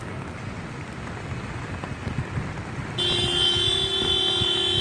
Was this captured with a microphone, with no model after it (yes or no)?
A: yes